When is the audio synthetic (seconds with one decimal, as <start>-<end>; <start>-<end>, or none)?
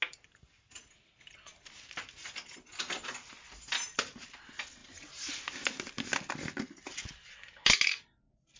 none